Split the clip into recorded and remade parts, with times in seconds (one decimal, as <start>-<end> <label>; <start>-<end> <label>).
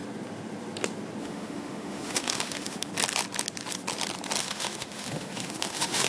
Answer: 0.0-1.2 recorded; 1.2-2.9 remade; 2.9-4.4 recorded; 4.4-6.1 remade